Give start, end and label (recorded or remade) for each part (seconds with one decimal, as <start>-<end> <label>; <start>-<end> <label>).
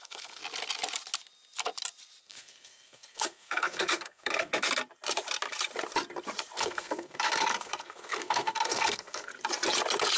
0.0-0.4 remade; 0.4-2.2 recorded; 2.2-4.5 remade; 4.5-6.6 recorded; 6.6-9.3 remade; 9.3-10.2 recorded